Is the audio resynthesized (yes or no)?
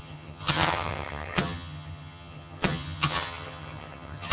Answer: yes